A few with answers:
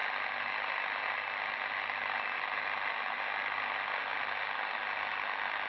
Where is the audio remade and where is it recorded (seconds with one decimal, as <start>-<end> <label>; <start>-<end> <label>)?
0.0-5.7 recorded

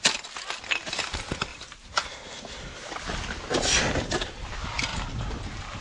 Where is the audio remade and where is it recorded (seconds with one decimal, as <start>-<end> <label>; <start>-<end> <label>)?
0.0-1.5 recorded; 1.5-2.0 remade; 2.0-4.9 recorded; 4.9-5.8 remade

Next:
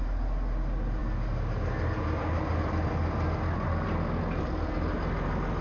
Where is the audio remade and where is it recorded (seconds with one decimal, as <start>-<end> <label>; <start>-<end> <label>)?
0.0-5.6 recorded